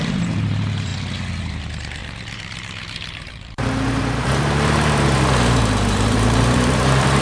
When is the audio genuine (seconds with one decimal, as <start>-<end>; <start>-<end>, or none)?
0.9-1.4